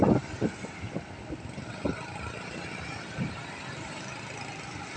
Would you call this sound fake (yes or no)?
no